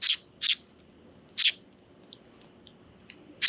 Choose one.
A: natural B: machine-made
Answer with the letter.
A